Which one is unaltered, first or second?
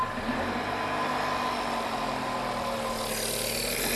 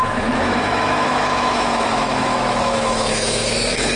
first